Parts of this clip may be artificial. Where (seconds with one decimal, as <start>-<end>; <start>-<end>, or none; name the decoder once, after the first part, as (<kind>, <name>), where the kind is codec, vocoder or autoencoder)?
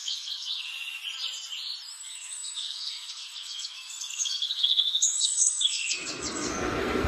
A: 0.0-0.7 (codec, SNAC); 2.0-7.1